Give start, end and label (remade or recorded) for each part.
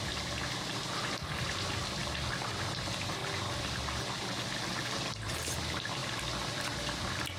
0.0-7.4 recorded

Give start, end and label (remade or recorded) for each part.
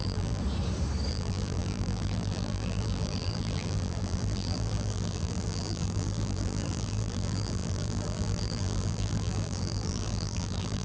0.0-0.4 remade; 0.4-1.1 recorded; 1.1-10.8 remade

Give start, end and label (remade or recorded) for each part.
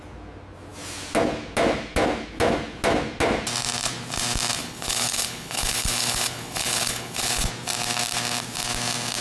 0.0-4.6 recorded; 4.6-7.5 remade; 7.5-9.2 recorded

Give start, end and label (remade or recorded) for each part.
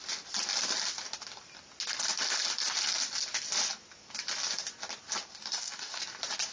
0.0-5.3 recorded; 5.3-6.0 remade; 6.0-6.5 recorded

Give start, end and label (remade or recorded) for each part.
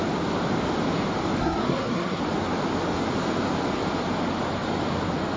0.0-1.4 recorded; 1.4-2.2 remade; 2.2-5.4 recorded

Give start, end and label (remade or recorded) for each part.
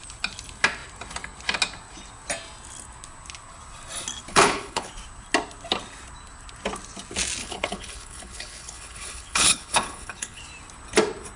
0.0-4.3 recorded; 4.3-4.9 remade; 4.9-7.4 recorded; 7.4-10.4 remade; 10.4-11.4 recorded